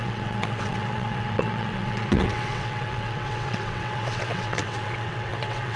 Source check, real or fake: fake